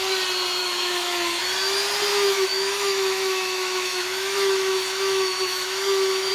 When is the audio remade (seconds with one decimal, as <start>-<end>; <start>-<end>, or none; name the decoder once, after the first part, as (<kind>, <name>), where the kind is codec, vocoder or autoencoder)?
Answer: 0.6-1.4 (autoencoder, DAC-VAE); 2.1-6.3